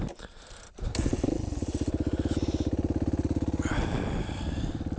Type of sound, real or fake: real